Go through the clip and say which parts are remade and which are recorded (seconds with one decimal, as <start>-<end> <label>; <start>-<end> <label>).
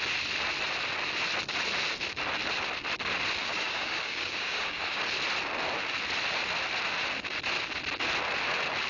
0.0-3.4 recorded; 3.4-5.0 remade; 5.0-8.9 recorded